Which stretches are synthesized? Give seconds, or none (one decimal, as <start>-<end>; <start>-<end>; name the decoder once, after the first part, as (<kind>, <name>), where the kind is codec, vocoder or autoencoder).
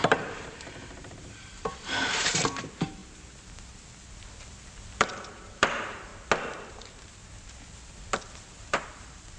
0.0-3.0 (vocoder, BigVGAN v2); 4.9-6.1; 6.7-7.2; 8.5-9.4